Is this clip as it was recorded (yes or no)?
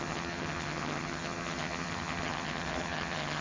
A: no